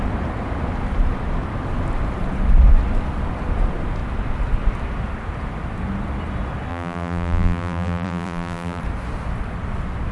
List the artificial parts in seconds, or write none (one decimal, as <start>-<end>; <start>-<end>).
6.7-8.8

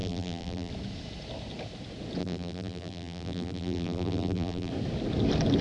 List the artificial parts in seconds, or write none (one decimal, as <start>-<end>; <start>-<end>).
0.0-0.7; 2.2-4.7

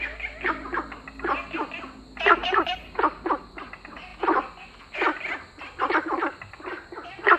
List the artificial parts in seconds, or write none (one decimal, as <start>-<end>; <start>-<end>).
2.4-3.5